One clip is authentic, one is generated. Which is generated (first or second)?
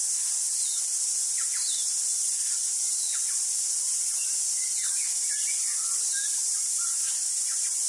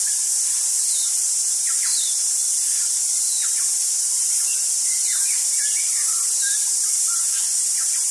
second